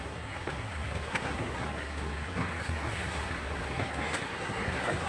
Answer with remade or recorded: remade